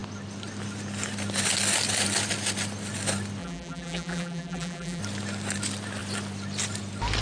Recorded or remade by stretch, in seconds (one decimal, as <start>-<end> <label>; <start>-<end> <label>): 0.0-3.4 recorded; 3.4-5.0 remade; 5.0-7.2 recorded